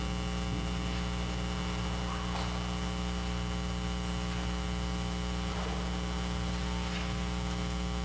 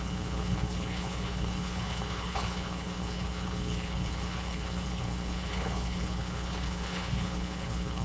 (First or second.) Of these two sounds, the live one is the first